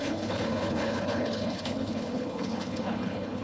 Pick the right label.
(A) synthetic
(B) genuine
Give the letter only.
A